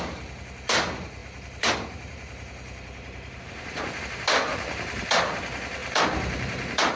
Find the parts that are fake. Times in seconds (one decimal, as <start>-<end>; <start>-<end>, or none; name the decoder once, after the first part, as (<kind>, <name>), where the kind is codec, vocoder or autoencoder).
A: 1.2-4.0 (vocoder, BigVGAN v2); 4.5-5.2; 5.8-7.0